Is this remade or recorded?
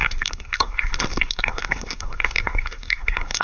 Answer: remade